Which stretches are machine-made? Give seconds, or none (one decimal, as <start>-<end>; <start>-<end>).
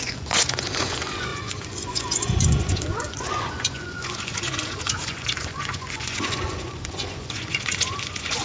0.0-8.4